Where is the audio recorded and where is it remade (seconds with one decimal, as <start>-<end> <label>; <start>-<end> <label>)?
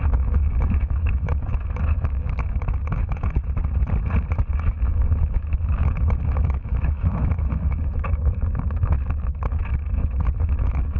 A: 0.0-3.4 remade; 3.4-4.5 recorded; 4.5-11.0 remade